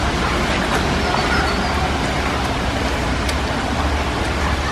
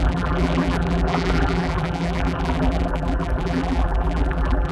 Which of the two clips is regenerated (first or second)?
second